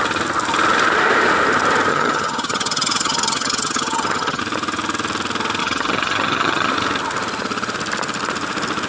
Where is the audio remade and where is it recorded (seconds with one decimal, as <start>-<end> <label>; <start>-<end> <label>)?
0.0-1.9 recorded; 1.9-4.4 remade; 4.4-5.6 recorded; 5.6-6.7 remade; 6.7-8.9 recorded